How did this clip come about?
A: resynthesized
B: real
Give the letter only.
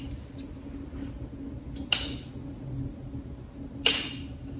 B